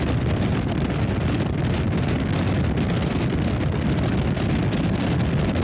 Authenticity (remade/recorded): recorded